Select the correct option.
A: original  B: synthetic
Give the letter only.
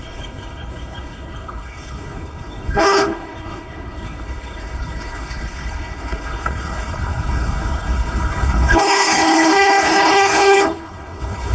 B